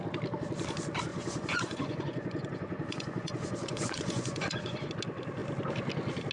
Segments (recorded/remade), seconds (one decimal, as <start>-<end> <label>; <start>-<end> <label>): 0.0-1.1 recorded; 1.1-4.9 remade; 4.9-6.3 recorded